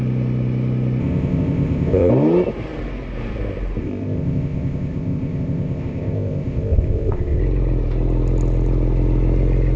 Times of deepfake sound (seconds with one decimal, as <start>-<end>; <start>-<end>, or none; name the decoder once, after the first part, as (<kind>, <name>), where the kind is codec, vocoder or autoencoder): 1.0-2.1 (codec, ZipCodec); 3.8-7.4